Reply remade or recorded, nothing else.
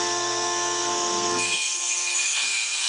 remade